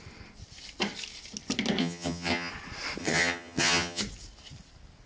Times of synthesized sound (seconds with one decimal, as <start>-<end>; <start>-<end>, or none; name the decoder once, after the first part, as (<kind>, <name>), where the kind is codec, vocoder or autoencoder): 1.8-2.5 (vocoder, HiFi-GAN); 3.0-4.0